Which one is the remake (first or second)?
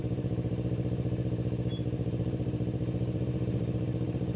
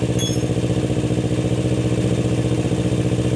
first